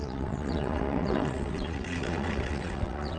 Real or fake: fake